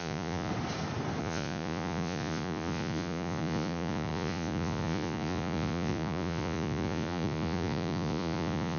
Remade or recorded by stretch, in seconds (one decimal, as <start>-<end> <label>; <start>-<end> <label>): 0.0-0.5 remade; 0.5-1.2 recorded; 1.2-8.8 remade